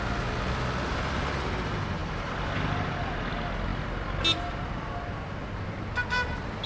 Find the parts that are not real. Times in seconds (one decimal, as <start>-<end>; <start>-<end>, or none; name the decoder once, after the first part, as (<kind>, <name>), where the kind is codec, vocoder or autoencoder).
none